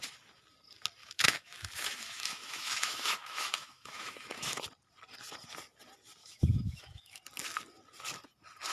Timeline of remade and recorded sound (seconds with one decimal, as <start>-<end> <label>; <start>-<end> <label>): 0.0-1.0 recorded; 1.0-4.6 remade; 4.6-6.2 recorded; 6.2-7.2 remade; 7.2-8.7 recorded